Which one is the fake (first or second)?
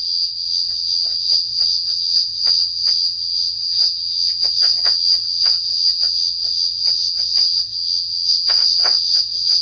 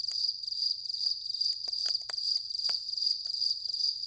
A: first